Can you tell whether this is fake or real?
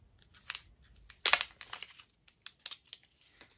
real